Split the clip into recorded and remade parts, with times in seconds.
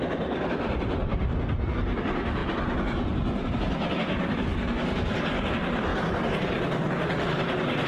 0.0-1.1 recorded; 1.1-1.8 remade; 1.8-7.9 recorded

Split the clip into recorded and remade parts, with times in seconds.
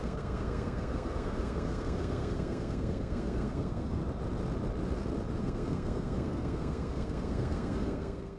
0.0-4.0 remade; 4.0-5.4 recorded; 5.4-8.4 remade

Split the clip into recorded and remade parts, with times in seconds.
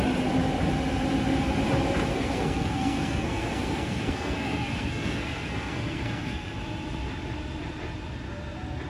0.0-2.1 recorded; 2.1-6.6 remade; 6.6-8.9 recorded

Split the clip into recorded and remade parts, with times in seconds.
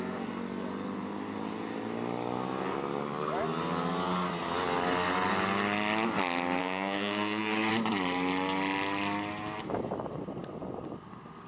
0.0-6.6 recorded; 6.6-7.7 remade; 7.7-11.5 recorded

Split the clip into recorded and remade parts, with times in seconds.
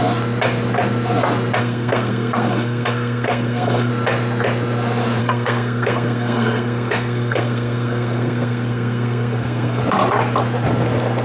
0.0-1.6 recorded; 1.6-3.9 remade; 3.9-5.2 recorded; 5.2-9.8 remade; 9.8-11.2 recorded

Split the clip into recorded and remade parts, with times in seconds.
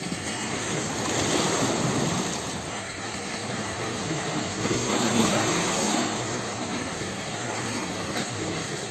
0.0-0.9 remade; 0.9-2.7 recorded; 2.7-8.9 remade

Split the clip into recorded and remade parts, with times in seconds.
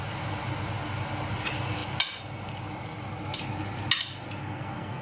0.0-4.4 recorded; 4.4-5.0 remade